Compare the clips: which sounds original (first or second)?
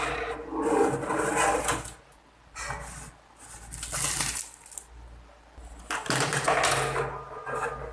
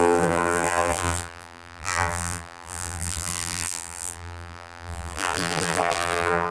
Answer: first